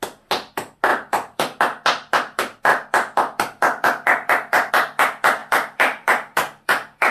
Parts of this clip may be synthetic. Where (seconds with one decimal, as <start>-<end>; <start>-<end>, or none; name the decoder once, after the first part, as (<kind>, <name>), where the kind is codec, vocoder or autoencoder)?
0.9-1.6 (vocoder, BigVGAN v2); 2.7-4.7; 5.4-7.1